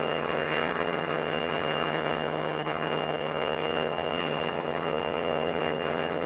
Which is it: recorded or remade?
remade